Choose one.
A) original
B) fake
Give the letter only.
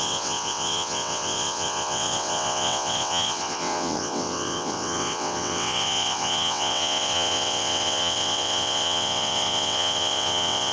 B